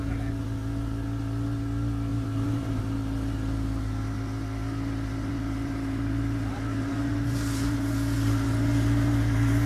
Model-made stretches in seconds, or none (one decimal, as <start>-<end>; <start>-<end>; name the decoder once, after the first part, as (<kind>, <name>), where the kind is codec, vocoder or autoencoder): 2.1-2.8 (vocoder, BigVGAN v2); 5.3-9.7